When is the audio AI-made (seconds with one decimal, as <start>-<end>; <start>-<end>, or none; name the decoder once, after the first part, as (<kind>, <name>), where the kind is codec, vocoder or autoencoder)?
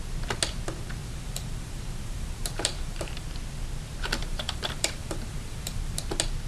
1.0-3.3 (vocoder, BigVGAN v2); 4.2-6.0